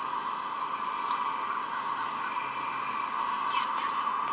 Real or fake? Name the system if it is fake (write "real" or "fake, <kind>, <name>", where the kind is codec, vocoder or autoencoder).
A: real